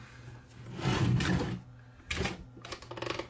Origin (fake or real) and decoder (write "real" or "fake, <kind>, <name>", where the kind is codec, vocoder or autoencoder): real